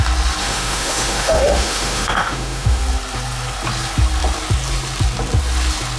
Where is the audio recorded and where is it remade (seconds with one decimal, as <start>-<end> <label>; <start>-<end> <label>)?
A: 0.0-0.4 recorded; 0.4-2.8 remade; 2.8-6.0 recorded